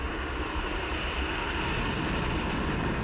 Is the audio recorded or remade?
recorded